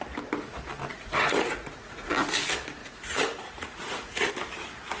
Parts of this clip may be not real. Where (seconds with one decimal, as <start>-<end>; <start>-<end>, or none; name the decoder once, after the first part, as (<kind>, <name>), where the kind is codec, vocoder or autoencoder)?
0.9-2.1 (vocoder, Vocos); 2.8-4.3